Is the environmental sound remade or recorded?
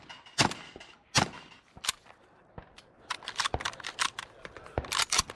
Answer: recorded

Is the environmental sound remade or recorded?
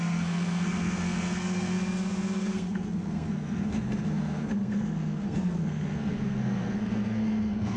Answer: remade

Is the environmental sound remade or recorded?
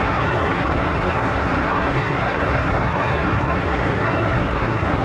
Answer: remade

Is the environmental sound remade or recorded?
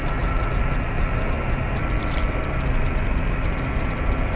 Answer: recorded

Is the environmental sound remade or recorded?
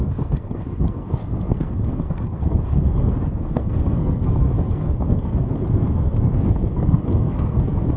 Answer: remade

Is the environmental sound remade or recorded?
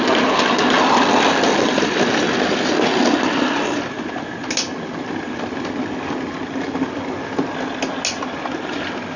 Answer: recorded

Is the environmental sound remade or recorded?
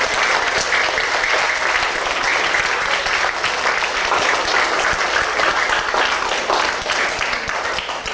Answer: recorded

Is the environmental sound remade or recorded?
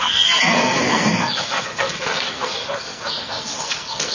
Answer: remade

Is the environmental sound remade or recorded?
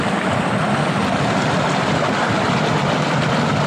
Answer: recorded